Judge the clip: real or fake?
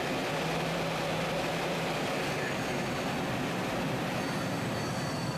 fake